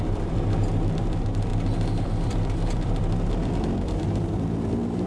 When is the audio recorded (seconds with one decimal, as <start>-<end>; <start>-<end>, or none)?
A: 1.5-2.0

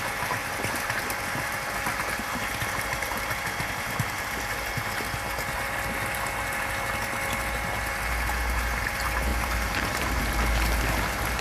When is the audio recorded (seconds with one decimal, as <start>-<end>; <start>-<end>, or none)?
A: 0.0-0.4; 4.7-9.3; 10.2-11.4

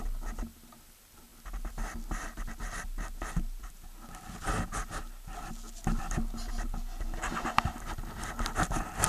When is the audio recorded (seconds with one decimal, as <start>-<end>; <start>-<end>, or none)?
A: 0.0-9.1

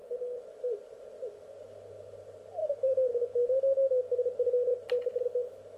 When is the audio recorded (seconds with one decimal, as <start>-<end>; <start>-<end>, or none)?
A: 0.0-2.6; 3.1-5.8

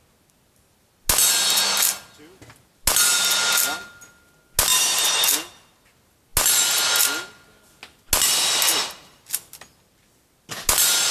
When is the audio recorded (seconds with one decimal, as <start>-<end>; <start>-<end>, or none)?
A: 0.0-11.1

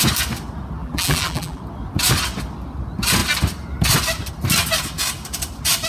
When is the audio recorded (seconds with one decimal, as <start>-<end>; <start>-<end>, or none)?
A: 0.0-0.8; 1.6-5.9